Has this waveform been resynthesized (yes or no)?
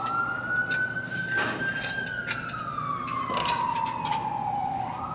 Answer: no